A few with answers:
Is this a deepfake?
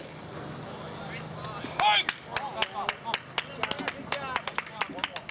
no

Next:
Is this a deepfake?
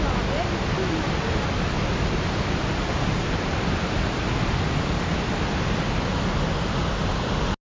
no